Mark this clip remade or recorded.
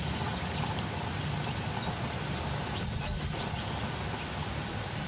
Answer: recorded